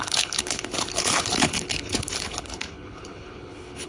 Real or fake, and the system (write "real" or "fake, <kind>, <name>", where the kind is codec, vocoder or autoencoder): fake, codec, HILCodec